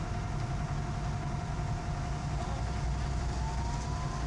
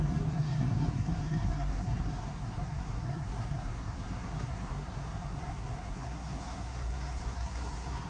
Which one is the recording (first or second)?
first